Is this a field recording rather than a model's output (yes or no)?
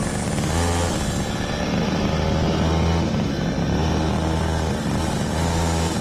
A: yes